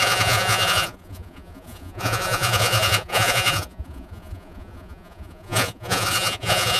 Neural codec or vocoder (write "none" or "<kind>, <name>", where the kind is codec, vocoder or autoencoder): vocoder, Vocos